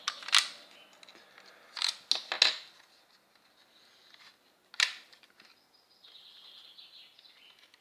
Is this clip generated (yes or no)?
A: no